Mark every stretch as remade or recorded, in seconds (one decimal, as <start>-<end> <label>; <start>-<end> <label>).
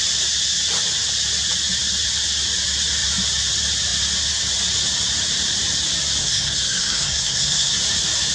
0.0-6.2 recorded; 6.2-7.7 remade; 7.7-8.3 recorded